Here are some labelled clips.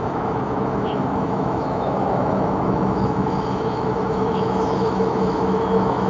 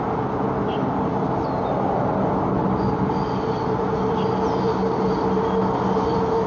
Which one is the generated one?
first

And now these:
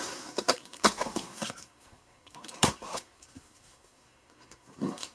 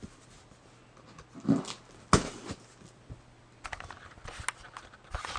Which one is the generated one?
first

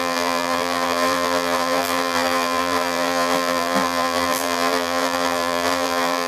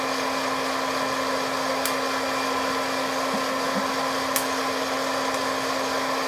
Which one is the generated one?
first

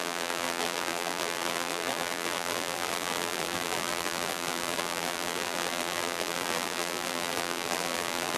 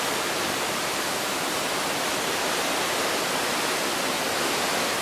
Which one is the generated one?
first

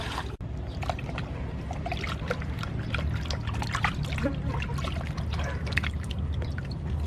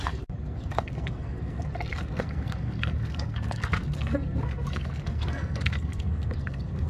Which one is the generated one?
second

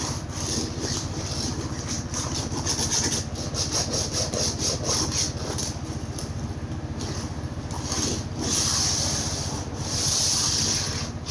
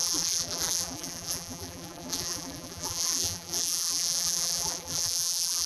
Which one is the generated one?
second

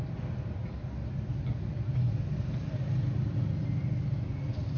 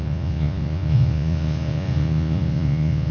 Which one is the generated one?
second